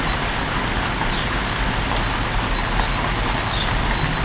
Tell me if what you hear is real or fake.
real